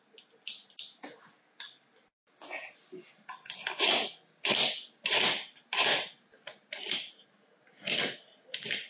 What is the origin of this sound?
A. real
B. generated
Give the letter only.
A